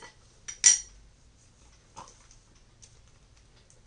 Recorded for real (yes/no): yes